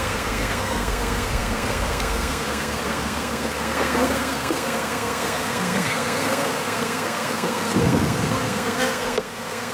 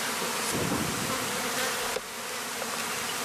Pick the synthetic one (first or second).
first